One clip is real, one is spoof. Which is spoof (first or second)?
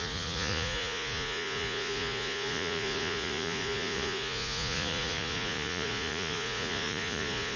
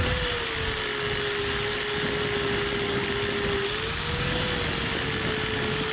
first